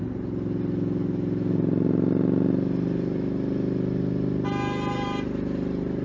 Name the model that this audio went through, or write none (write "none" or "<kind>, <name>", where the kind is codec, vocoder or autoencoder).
none